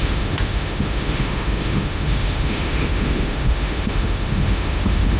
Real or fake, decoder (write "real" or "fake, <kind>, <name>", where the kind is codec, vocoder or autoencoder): fake, autoencoder, DAC-VAE